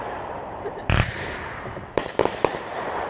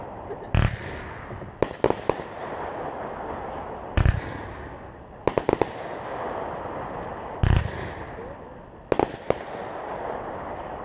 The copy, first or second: first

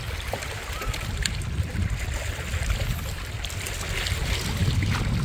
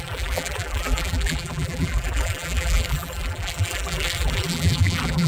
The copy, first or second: second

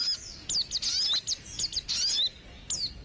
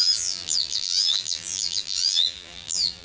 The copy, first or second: second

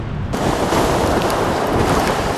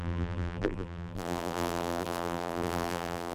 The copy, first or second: second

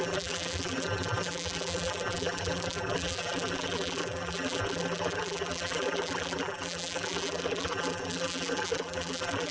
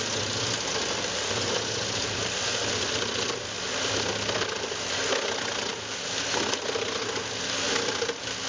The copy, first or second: first